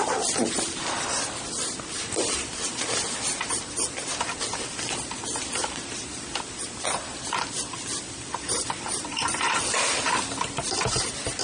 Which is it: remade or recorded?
remade